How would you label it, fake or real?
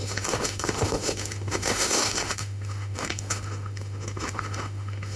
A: fake